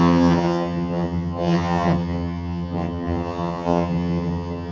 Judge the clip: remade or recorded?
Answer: remade